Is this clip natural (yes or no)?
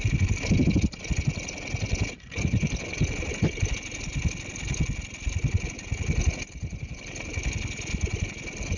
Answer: yes